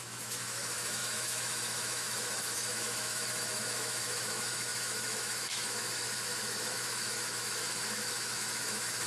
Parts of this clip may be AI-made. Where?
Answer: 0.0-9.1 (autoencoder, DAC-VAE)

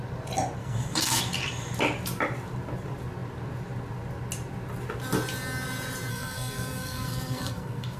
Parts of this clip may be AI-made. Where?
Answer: 0.6-1.2 (codec, SNAC); 6.1-8.0

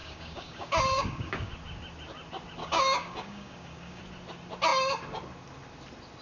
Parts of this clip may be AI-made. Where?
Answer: 0.0-1.5 (codec, DAC); 2.6-4.0